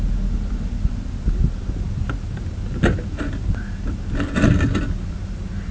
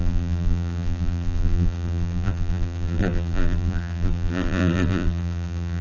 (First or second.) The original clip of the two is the first